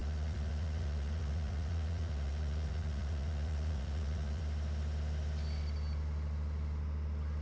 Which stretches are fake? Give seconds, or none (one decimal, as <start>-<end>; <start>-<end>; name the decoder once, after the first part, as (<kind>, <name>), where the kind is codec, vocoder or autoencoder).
0.0-4.4 (vocoder, Vocos)